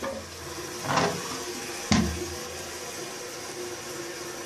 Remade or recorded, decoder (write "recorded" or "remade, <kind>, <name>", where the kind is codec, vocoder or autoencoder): recorded